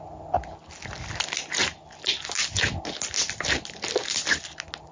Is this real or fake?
real